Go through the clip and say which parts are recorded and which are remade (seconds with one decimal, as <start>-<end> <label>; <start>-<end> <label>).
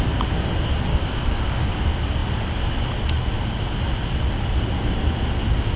0.0-0.9 recorded; 0.9-1.7 remade; 1.7-5.8 recorded